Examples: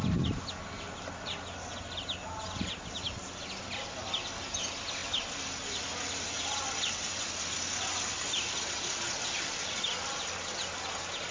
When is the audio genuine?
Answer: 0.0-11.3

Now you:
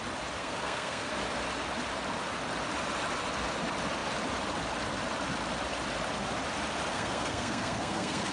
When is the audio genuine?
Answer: 0.0-0.4; 1.1-6.9